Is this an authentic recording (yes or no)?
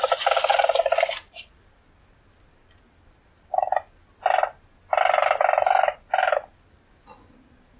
yes